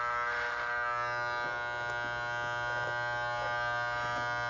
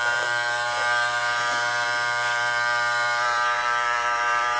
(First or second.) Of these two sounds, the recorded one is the first